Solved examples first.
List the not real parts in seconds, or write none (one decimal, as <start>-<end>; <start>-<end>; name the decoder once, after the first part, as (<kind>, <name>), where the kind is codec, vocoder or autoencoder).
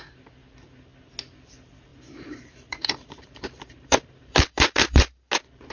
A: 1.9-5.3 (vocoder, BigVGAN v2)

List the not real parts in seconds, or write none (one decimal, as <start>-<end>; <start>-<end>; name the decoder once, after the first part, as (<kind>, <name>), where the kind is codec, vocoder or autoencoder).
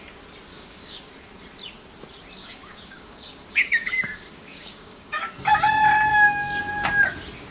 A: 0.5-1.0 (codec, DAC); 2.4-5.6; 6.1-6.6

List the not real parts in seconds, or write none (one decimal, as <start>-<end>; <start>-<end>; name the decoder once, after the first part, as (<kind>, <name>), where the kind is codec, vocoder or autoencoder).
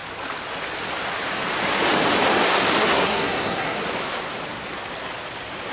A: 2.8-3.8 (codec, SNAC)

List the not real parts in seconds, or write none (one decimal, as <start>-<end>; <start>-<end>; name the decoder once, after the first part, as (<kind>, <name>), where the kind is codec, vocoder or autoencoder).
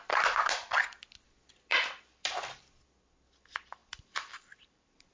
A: 1.7-2.6 (vocoder, BigVGAN v2); 3.8-5.1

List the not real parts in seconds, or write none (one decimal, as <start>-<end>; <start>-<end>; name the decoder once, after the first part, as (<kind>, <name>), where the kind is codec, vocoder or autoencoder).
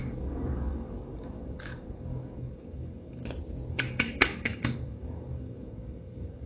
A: 0.0-3.2 (codec, DAC); 3.7-6.5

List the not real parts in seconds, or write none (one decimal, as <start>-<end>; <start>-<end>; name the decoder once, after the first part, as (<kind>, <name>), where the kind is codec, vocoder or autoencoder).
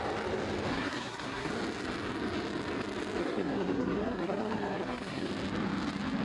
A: 0.7-1.5 (codec, SNAC); 3.2-5.3